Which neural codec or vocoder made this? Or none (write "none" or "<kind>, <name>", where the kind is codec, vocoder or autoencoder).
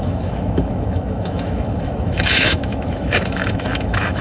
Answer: autoencoder, DAC-VAE